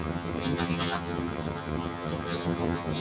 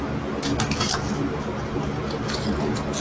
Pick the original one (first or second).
second